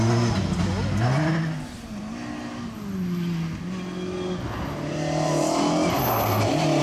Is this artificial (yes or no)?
no